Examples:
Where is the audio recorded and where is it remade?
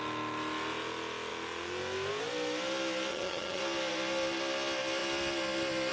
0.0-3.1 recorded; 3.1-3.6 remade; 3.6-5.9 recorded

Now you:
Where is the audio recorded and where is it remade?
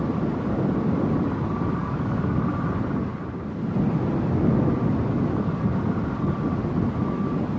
0.0-1.8 recorded; 1.8-2.5 remade; 2.5-7.6 recorded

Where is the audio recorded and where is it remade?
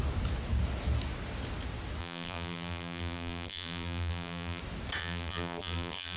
0.0-2.0 recorded; 2.0-4.6 remade; 4.6-5.0 recorded; 5.0-6.2 remade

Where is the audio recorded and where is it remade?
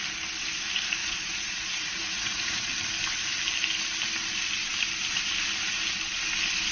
0.0-1.0 recorded; 1.0-2.7 remade; 2.7-6.7 recorded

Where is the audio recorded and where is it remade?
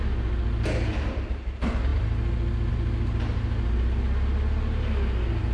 0.0-5.5 recorded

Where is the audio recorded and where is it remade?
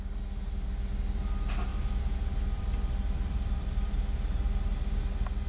0.0-1.7 recorded; 1.7-5.0 remade; 5.0-5.5 recorded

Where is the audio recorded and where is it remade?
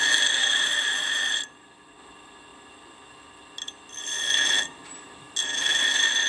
0.0-0.4 recorded; 0.4-1.5 remade; 1.5-6.3 recorded